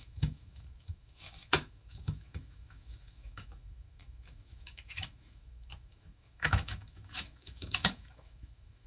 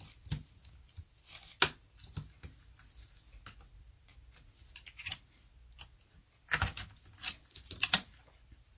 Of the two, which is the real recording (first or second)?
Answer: second